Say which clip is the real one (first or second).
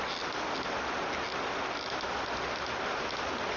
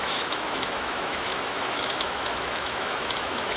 first